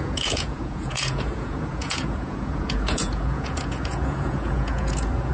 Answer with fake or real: fake